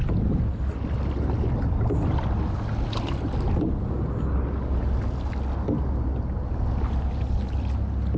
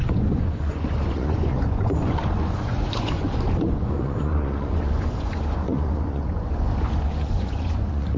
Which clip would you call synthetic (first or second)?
second